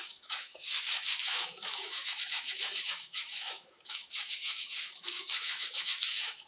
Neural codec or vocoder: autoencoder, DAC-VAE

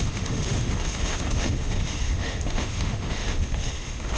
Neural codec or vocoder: autoencoder, DAC-VAE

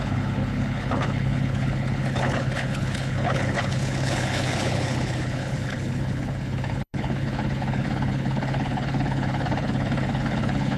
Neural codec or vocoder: codec, HILCodec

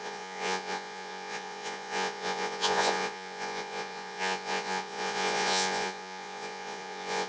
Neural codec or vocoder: vocoder, Vocos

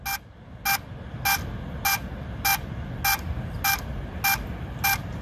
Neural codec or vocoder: none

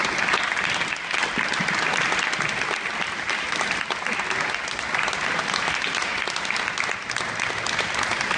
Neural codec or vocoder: none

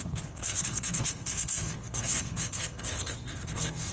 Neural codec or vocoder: codec, SNAC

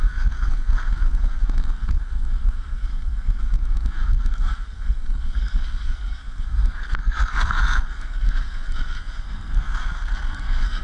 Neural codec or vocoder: codec, SNAC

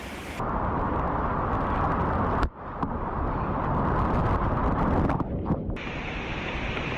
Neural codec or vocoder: none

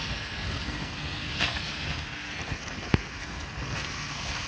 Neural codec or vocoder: codec, SNAC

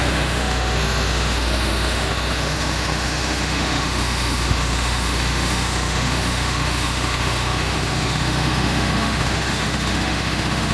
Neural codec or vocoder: autoencoder, DAC-VAE